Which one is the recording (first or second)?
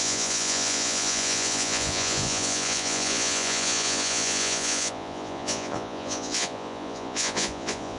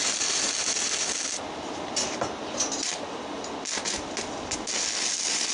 second